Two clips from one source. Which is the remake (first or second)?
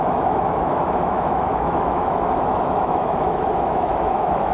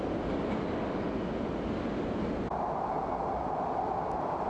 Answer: first